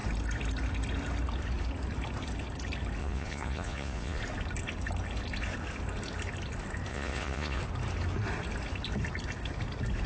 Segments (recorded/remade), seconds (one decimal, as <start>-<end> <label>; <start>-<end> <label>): 0.0-3.0 recorded; 3.0-4.2 remade; 4.2-6.9 recorded; 6.9-7.6 remade; 7.6-10.1 recorded